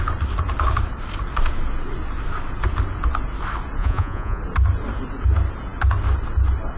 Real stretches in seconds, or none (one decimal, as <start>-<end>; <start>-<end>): 0.0-3.8; 4.4-6.8